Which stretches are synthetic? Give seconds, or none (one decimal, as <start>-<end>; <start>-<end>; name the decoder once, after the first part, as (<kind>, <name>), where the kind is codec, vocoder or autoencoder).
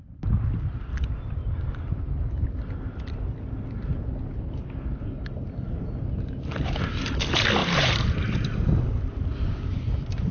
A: 7.6-8.8 (vocoder, BigVGAN v2); 9.7-10.3